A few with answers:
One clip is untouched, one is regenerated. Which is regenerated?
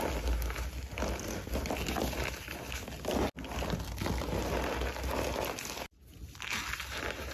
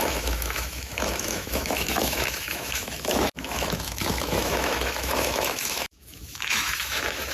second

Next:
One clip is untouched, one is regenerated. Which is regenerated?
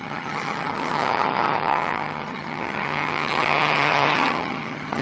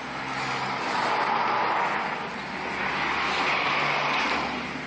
first